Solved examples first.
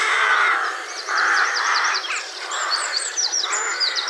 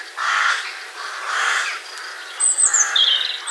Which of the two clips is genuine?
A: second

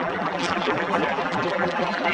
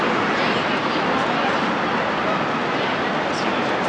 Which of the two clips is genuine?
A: second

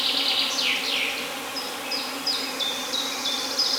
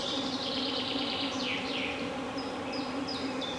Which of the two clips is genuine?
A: first